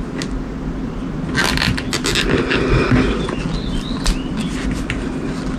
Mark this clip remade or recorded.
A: recorded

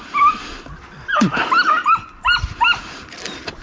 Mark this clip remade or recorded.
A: remade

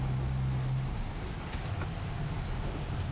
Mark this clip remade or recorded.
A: recorded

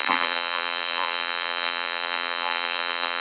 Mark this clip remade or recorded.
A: remade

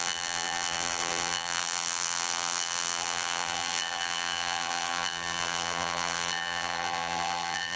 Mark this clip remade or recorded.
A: remade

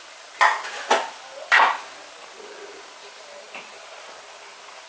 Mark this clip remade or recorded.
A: recorded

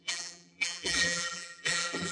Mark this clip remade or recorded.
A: remade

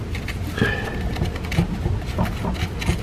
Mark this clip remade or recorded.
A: recorded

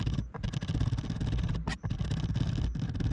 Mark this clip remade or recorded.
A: recorded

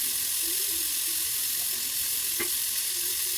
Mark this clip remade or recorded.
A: remade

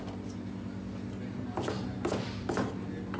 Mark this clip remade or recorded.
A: recorded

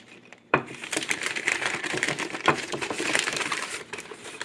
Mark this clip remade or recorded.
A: remade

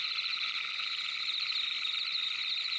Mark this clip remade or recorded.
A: recorded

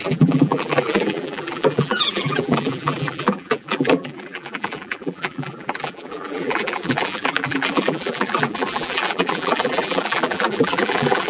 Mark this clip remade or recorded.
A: remade